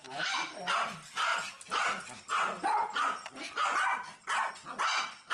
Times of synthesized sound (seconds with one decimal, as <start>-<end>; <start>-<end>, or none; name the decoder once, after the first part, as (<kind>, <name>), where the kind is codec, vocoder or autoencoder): none